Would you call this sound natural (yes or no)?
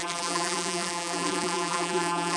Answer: no